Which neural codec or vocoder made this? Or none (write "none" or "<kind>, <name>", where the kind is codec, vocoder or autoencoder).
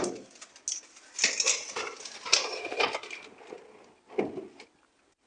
none